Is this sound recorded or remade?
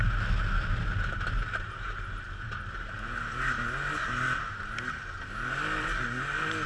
recorded